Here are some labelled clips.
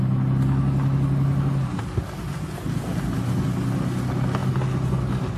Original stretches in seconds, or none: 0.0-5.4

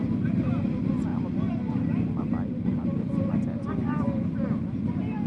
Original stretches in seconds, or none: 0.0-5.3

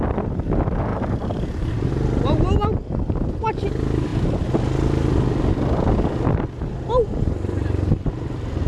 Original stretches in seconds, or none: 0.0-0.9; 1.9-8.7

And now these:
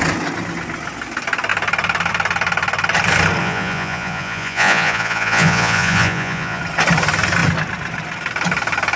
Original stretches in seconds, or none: 0.0-3.4; 6.6-9.0

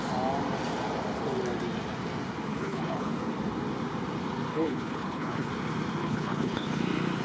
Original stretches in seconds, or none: 0.0-2.5; 3.1-4.5; 5.5-6.0; 6.8-7.2

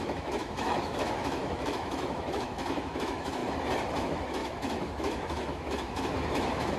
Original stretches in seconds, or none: 3.4-4.0